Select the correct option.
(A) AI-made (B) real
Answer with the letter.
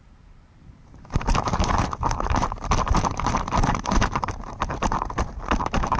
A